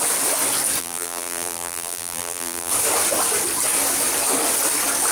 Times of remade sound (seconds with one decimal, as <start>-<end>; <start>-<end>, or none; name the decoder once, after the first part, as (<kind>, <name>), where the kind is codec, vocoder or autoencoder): 0.8-2.7 (vocoder, BigVGAN v2)